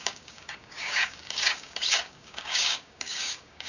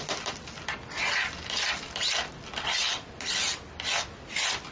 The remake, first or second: first